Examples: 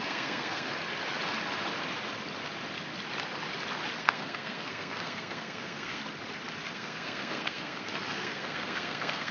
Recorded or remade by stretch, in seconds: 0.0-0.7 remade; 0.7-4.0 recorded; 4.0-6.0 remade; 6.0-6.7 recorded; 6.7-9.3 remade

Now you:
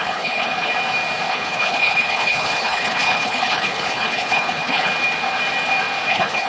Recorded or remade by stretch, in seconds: 0.0-0.7 remade; 0.7-1.3 recorded; 1.3-4.9 remade; 4.9-6.1 recorded; 6.1-6.5 remade

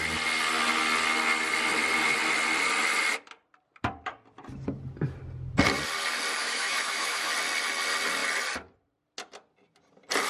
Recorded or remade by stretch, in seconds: 0.0-6.4 recorded; 6.4-7.3 remade; 7.3-10.3 recorded

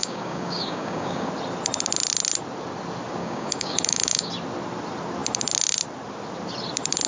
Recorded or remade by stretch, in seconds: 0.0-1.3 remade; 1.3-3.2 recorded; 3.2-4.3 remade; 4.3-7.1 recorded

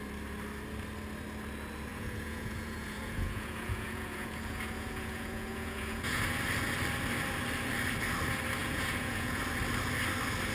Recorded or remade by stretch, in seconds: 0.0-1.9 recorded; 1.9-6.2 remade; 6.2-8.6 recorded; 8.6-9.4 remade; 9.4-10.5 recorded